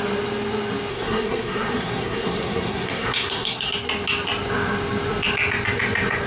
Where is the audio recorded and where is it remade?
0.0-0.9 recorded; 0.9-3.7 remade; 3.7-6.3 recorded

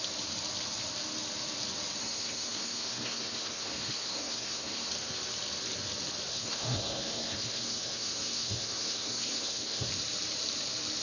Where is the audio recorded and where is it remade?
0.0-2.0 recorded; 2.0-4.9 remade; 4.9-6.3 recorded; 6.3-9.9 remade; 9.9-11.0 recorded

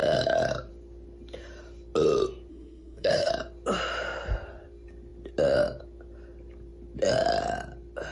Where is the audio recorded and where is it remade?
0.0-2.5 recorded; 2.5-3.3 remade; 3.3-8.1 recorded

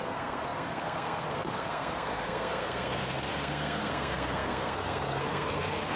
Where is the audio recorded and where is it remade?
0.0-6.0 remade

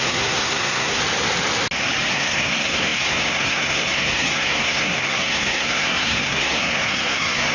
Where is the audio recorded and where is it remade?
0.0-1.0 remade; 1.0-2.1 recorded; 2.1-7.5 remade